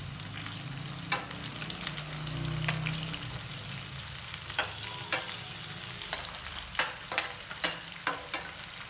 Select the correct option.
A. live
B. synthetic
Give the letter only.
A